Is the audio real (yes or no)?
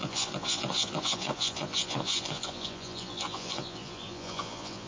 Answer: no